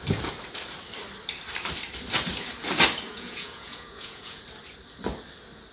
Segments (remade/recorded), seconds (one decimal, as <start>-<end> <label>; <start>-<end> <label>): 0.0-3.1 recorded; 3.1-4.4 remade; 4.4-5.7 recorded